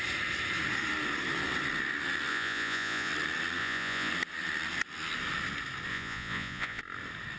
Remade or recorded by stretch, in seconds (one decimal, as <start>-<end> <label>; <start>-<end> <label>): 0.0-2.3 recorded; 2.3-3.1 remade; 3.1-3.6 recorded; 3.6-4.1 remade; 4.1-5.9 recorded; 5.9-6.8 remade; 6.8-7.4 recorded